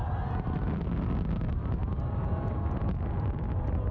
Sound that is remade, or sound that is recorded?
recorded